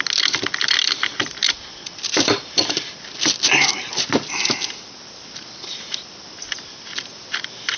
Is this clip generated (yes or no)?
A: no